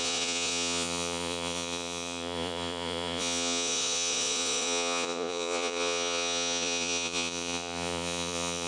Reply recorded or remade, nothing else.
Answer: remade